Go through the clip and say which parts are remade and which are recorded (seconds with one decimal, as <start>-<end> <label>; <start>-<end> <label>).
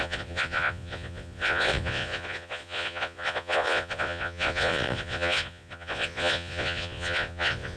0.0-7.8 remade